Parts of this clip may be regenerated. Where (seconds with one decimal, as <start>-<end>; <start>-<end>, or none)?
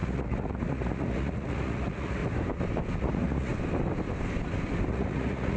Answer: 0.0-2.2; 3.0-3.5; 4.9-5.6